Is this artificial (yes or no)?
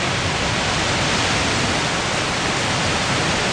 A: no